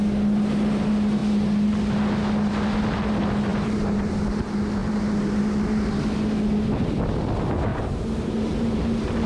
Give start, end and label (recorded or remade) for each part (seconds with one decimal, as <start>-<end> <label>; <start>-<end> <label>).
0.0-3.5 recorded; 3.5-4.1 remade; 4.1-4.8 recorded; 4.8-5.4 remade; 5.4-7.7 recorded; 7.7-9.3 remade

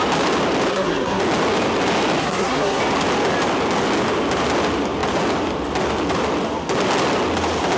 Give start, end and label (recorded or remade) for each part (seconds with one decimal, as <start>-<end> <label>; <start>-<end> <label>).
0.0-0.7 recorded; 0.7-1.2 remade; 1.2-2.2 recorded; 2.2-2.8 remade; 2.8-7.8 recorded

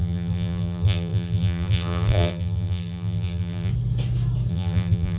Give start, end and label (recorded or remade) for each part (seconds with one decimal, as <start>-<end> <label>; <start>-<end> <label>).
0.0-3.7 remade; 3.7-4.5 recorded; 4.5-5.2 remade

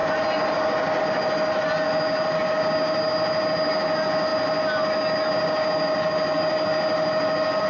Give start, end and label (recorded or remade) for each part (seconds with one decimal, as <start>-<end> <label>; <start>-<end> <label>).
0.0-7.7 recorded

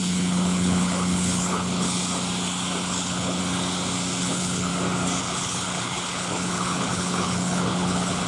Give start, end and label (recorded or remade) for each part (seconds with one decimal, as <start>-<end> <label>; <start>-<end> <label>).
0.0-2.0 remade; 2.0-2.9 recorded; 2.9-3.4 remade; 3.4-4.2 recorded; 4.2-4.7 remade; 4.7-5.2 recorded; 5.2-8.3 remade